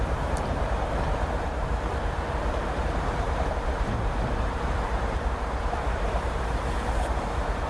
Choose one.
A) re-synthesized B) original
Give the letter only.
A